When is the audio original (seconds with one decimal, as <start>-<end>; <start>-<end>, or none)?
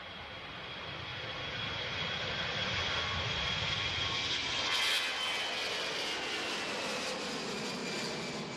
1.1-1.7; 7.8-8.6